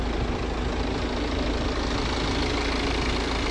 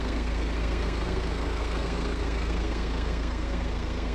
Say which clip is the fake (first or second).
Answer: second